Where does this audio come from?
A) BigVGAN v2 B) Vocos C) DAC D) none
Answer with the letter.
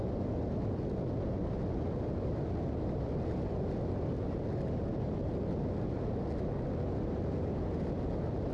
D